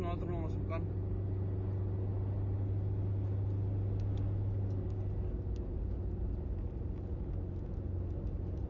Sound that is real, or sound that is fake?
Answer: real